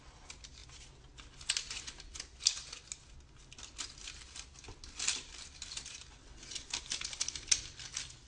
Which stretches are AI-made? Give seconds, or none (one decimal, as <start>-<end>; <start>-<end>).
none